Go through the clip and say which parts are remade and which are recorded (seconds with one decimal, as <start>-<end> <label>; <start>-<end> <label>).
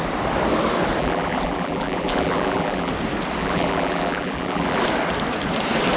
0.0-1.0 recorded; 1.0-2.9 remade; 2.9-3.4 recorded; 3.4-4.8 remade; 4.8-6.0 recorded